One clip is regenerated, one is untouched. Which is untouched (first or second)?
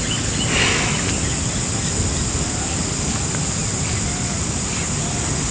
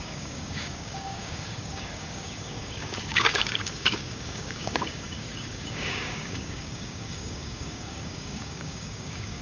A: first